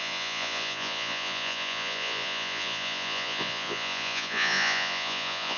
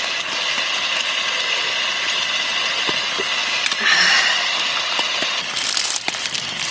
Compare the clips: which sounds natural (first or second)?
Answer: second